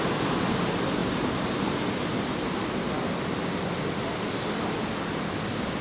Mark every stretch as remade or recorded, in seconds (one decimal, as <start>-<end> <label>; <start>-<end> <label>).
0.0-5.8 recorded